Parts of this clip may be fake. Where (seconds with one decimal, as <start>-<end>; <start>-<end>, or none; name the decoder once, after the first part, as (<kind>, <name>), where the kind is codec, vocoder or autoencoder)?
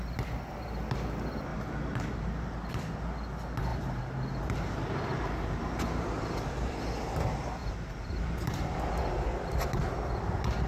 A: 1.5-2.7 (vocoder, BigVGAN v2); 3.7-6.7; 7.6-8.9